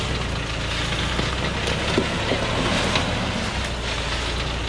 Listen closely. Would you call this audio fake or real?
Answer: real